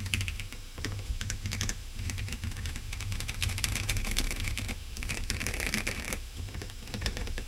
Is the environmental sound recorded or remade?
remade